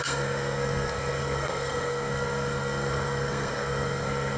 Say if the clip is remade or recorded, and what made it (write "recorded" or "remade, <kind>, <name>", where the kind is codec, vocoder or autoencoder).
remade, codec, SNAC